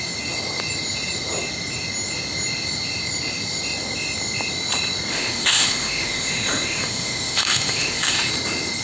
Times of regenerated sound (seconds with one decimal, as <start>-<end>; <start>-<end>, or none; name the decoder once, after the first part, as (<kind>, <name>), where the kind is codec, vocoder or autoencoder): 5.1-8.3 (autoencoder, DAC-VAE)